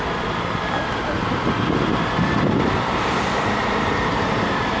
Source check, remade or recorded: remade